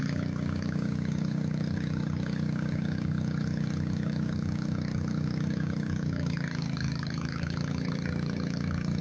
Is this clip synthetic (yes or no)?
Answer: yes